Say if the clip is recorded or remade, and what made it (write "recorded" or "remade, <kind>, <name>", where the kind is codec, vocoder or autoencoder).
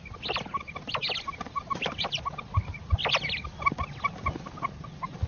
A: recorded